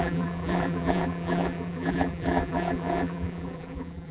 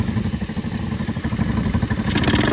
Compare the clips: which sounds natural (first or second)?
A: second